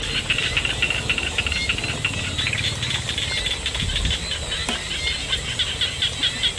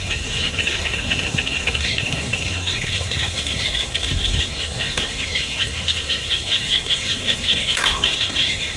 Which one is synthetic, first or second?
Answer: second